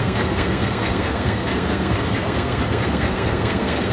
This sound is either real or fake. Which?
fake